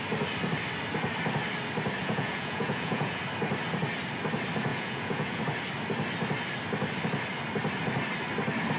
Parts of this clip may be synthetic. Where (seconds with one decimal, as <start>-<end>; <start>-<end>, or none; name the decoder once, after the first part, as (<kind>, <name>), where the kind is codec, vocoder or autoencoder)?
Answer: 2.0-3.2 (vocoder, Vocos); 4.7-5.4